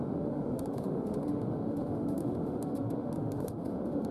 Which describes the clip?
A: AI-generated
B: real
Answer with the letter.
A